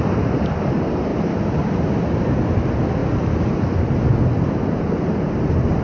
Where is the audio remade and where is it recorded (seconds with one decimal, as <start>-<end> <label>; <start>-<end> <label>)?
0.0-5.8 recorded